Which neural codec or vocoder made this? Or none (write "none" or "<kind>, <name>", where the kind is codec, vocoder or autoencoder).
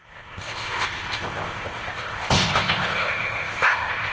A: codec, ZipCodec